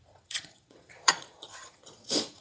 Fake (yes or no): yes